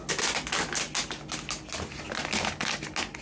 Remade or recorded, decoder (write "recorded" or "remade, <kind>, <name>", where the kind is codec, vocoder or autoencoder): recorded